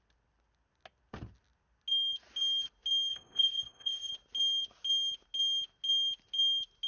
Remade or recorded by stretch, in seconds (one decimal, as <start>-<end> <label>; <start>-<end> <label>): 0.0-3.1 recorded; 3.1-4.1 remade; 4.1-6.9 recorded